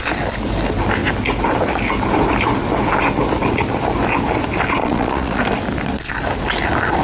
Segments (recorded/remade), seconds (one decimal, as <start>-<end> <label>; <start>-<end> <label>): 0.0-4.8 recorded; 4.8-5.4 remade; 5.4-7.0 recorded